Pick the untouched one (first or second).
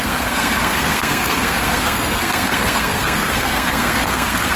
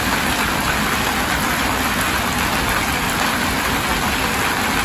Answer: second